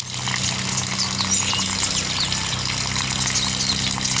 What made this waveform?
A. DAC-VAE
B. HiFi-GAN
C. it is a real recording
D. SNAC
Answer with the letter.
C